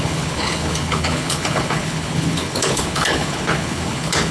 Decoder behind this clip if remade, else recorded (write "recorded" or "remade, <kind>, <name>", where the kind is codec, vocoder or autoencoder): remade, codec, HILCodec